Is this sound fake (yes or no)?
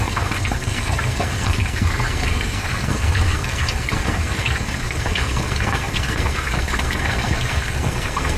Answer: yes